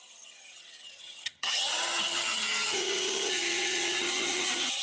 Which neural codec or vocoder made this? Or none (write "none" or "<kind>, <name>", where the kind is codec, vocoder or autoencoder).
vocoder, HiFi-GAN